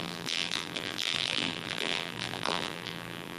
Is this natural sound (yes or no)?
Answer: no